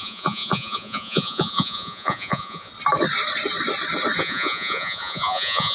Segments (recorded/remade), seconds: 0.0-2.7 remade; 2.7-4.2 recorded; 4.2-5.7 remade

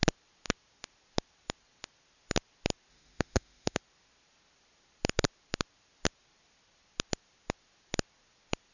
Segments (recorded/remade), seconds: 0.0-2.9 recorded; 2.9-3.8 remade; 3.8-8.7 recorded

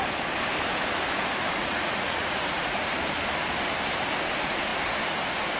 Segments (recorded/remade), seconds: 0.0-1.6 recorded; 1.6-3.0 remade; 3.0-5.6 recorded

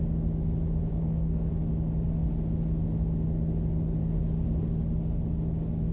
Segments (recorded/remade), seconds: 0.0-0.9 recorded; 0.9-1.5 remade; 1.5-5.9 recorded

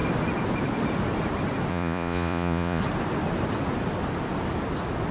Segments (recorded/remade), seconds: 0.0-1.7 recorded; 1.7-2.8 remade; 2.8-5.1 recorded

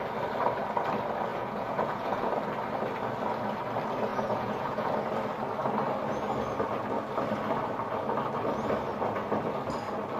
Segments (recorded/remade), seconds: 0.0-1.3 recorded; 1.3-2.3 remade; 2.3-4.1 recorded; 4.1-4.9 remade; 4.9-10.2 recorded

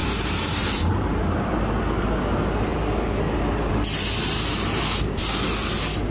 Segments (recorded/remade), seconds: 0.0-1.5 remade; 1.5-6.1 recorded

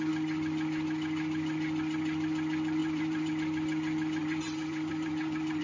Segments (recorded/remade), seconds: 0.0-2.8 recorded; 2.8-3.3 remade; 3.3-4.2 recorded; 4.2-5.6 remade